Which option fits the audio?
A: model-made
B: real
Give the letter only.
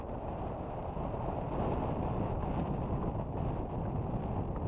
B